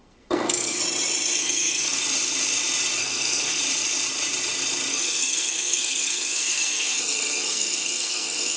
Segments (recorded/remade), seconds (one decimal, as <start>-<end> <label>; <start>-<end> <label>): 0.0-0.8 remade; 0.8-1.4 recorded; 1.4-2.0 remade; 2.0-3.0 recorded; 3.0-3.6 remade; 3.6-4.9 recorded; 4.9-8.6 remade